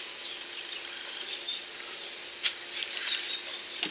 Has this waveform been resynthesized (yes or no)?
no